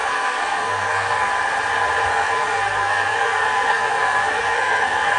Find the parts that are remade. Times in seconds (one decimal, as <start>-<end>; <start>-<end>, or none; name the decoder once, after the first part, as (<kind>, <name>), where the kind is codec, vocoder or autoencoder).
0.0-1.3 (codec, SNAC); 2.1-5.2

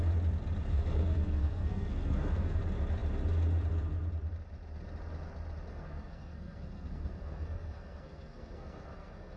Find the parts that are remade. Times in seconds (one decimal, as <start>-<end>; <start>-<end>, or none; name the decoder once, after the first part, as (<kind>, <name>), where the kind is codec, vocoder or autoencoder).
0.7-2.6 (codec, SNAC); 5.7-9.4

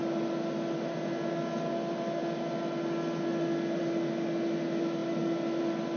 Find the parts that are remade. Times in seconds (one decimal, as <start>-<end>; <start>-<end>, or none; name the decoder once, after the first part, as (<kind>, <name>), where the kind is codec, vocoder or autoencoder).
none

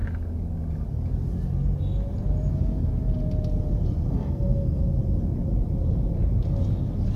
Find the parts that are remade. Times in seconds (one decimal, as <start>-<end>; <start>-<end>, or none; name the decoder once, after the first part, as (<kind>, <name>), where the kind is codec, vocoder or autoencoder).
4.1-4.8 (codec, SNAC)

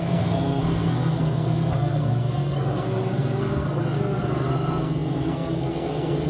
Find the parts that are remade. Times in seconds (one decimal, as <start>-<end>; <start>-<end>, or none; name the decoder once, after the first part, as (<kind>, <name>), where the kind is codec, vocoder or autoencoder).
0.0-6.3 (codec, SNAC)